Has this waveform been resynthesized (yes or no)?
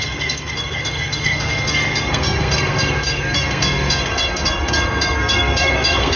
yes